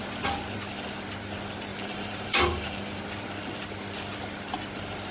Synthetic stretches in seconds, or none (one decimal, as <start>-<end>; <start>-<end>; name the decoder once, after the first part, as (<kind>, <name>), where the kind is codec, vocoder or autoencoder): 1.7-3.0 (vocoder, BigVGAN v2)